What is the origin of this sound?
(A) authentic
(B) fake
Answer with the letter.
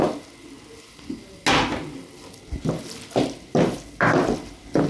A